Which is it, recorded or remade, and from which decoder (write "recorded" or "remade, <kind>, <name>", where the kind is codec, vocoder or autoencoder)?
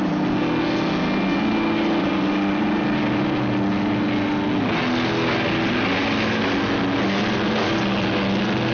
recorded